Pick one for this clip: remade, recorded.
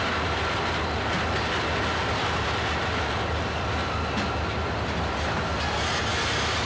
recorded